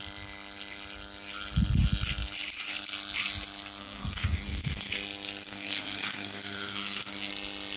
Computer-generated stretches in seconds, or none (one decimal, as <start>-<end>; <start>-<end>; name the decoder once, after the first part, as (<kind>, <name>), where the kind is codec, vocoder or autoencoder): 3.8-4.9 (codec, SNAC); 5.4-7.3